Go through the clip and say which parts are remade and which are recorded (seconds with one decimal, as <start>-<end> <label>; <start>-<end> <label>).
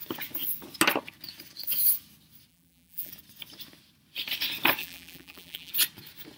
0.0-2.5 recorded; 2.5-3.1 remade; 3.1-4.8 recorded; 4.8-5.7 remade; 5.7-6.4 recorded